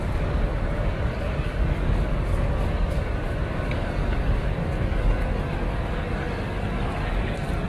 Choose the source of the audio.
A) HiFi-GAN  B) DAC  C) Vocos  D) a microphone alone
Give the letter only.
B